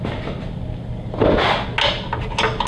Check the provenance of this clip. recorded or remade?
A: recorded